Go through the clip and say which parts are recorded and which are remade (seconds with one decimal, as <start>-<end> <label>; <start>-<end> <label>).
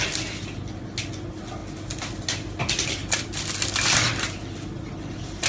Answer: 0.0-5.5 recorded